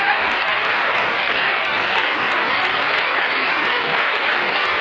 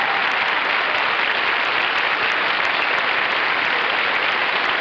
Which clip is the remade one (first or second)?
first